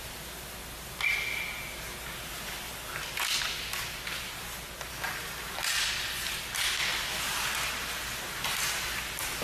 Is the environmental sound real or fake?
real